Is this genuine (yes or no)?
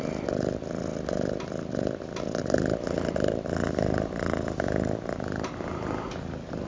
yes